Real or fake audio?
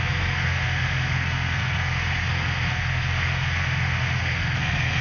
fake